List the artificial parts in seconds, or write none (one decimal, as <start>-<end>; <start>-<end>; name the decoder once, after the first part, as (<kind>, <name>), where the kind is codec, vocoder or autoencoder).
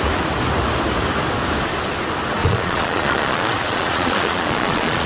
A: 2.4-5.1 (vocoder, Vocos)